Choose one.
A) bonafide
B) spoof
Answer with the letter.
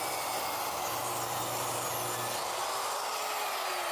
A